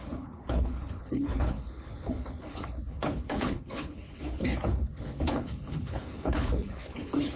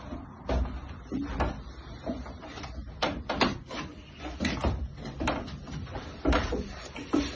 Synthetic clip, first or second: first